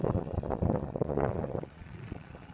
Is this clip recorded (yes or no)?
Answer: no